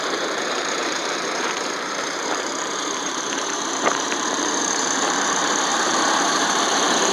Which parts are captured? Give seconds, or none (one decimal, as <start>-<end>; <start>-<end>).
none